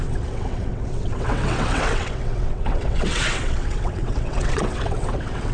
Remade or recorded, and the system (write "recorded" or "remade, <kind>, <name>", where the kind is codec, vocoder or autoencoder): remade, vocoder, WaveNeXt